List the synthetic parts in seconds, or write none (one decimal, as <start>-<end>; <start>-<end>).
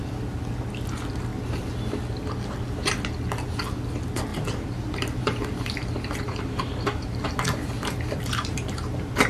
4.3-9.3